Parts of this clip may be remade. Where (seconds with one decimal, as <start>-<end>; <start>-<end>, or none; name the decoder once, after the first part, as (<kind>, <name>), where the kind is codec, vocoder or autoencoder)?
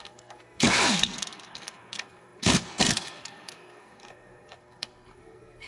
0.0-5.7 (codec, SNAC)